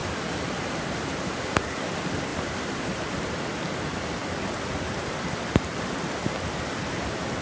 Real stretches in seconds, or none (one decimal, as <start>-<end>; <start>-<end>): 0.0-2.3; 3.6-7.4